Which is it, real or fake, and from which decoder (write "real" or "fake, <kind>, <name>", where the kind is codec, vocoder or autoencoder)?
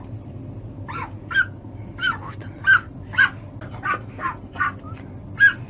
real